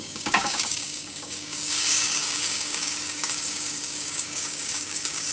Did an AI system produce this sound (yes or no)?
yes